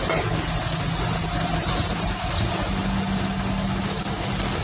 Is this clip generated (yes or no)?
no